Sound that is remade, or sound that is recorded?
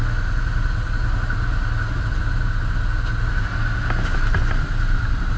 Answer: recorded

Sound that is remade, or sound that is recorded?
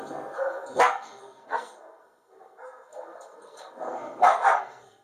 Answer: remade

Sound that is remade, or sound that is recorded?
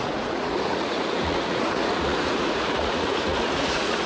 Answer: remade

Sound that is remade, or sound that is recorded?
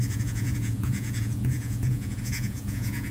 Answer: remade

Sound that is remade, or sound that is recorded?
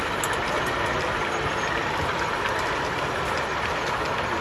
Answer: recorded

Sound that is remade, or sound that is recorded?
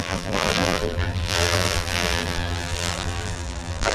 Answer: remade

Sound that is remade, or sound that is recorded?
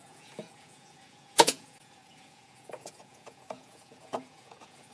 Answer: remade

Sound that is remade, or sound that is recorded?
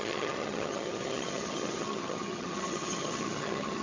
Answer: remade